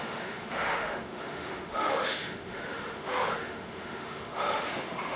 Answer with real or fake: fake